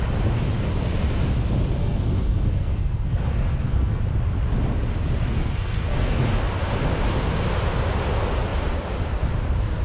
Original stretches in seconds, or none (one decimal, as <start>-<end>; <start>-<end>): 0.0-1.8; 4.0-5.3; 6.2-9.8